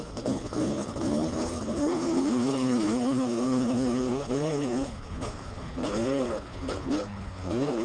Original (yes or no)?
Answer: no